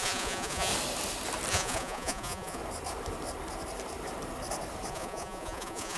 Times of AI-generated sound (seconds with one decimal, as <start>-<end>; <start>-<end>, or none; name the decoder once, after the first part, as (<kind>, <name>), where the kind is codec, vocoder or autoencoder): 0.0-0.7 (vocoder, Vocos); 1.5-2.6; 4.9-6.0